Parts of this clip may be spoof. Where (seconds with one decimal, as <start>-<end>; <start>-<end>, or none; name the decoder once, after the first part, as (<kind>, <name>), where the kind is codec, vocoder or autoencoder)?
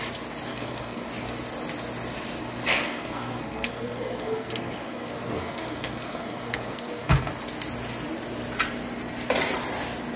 0.5-1.1 (codec, SNAC); 2.7-7.3